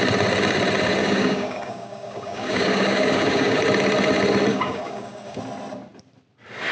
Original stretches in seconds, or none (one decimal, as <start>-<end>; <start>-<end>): 0.0-1.0; 3.6-4.5; 5.4-6.7